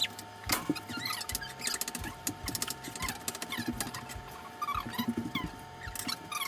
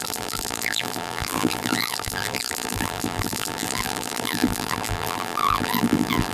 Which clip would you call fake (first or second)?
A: second